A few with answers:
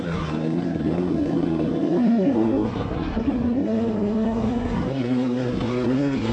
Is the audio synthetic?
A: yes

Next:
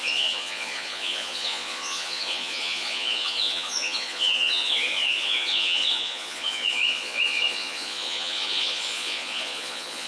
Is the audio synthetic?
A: yes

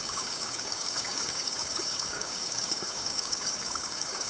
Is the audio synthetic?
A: yes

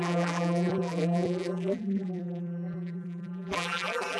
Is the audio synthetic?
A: yes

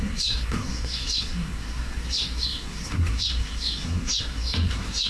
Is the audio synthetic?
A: yes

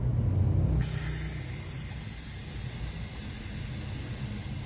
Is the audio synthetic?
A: no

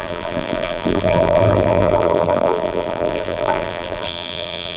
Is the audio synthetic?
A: yes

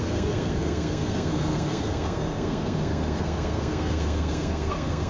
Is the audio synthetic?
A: yes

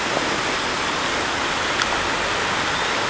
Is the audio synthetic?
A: no